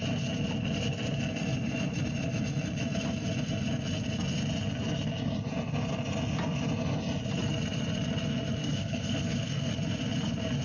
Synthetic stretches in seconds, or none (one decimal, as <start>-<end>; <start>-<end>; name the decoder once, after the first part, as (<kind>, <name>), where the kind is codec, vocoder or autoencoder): 8.6-9.7 (codec, SNAC)

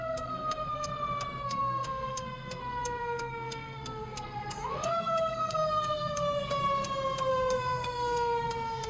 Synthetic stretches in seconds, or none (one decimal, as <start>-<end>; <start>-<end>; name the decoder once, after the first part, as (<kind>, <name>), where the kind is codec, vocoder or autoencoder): 0.0-0.9 (codec, SNAC); 1.4-6.6; 7.3-8.9

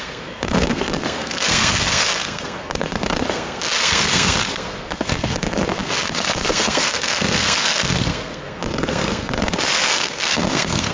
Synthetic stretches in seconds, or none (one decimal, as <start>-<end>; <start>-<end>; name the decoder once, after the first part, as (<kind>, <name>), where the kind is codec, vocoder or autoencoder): 0.0-10.9 (codec, SNAC)